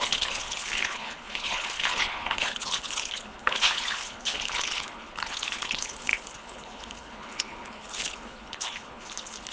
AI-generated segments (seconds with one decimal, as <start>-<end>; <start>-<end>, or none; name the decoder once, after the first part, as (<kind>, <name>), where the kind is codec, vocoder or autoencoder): 0.0-9.5 (codec, HILCodec)